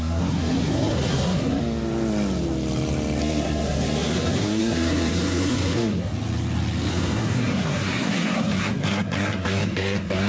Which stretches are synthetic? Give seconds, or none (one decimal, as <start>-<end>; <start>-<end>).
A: 0.0-1.6; 3.2-6.1; 6.9-10.3